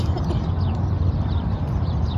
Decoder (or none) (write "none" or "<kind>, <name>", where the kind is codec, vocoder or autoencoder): none